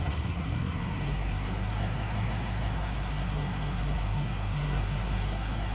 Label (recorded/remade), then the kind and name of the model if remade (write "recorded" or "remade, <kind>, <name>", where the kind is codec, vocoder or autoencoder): remade, codec, SNAC